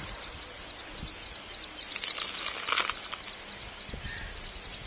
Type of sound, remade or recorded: recorded